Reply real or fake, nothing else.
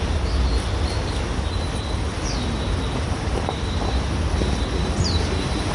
fake